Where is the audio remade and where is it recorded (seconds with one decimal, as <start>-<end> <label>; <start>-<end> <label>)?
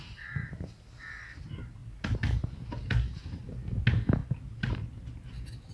0.0-5.7 recorded